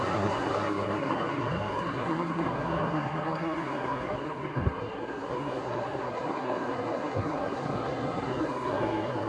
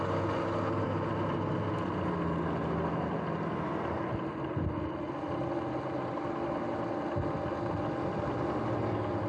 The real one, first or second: second